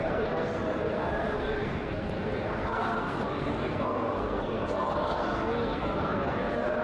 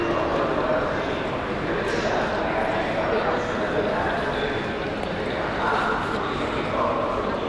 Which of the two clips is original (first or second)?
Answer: second